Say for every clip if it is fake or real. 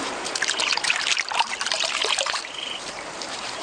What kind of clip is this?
fake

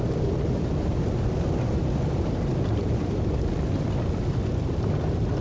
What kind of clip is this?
real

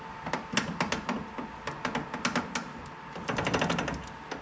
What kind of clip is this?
real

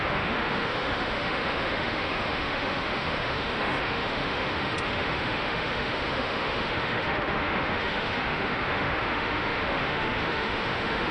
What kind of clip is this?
fake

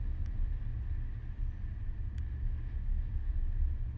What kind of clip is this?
real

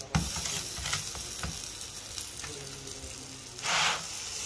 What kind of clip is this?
real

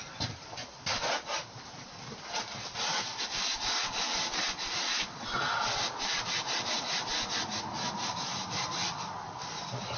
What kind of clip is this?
fake